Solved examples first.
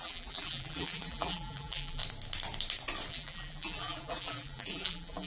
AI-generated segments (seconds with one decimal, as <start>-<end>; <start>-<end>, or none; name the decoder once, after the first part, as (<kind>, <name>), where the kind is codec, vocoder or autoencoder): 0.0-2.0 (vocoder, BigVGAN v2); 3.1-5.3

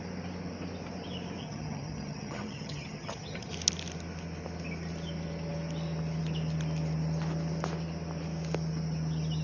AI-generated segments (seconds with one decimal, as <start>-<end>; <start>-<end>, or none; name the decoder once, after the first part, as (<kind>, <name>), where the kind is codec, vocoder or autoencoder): 1.4-3.5 (vocoder, HiFi-GAN)

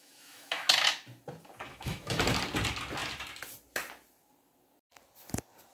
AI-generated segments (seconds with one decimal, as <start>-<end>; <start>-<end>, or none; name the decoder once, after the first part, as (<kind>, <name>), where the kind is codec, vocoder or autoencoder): 0.0-0.7 (autoencoder, DAC-VAE); 1.7-2.2